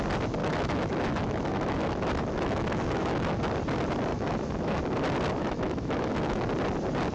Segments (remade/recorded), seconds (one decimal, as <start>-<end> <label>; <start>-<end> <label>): 0.0-0.4 recorded; 0.4-3.4 remade; 3.4-4.1 recorded; 4.1-4.8 remade; 4.8-5.4 recorded; 5.4-6.5 remade; 6.5-7.1 recorded